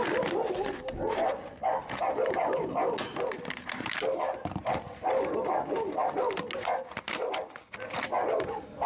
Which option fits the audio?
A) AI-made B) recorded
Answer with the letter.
B